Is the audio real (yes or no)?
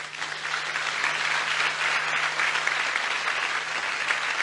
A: yes